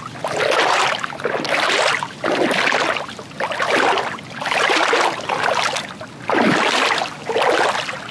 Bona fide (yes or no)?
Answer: yes